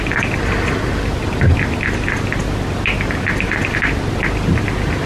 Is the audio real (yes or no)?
yes